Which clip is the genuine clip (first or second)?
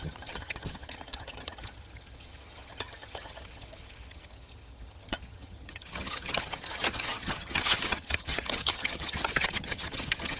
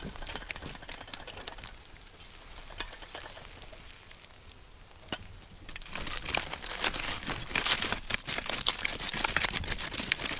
second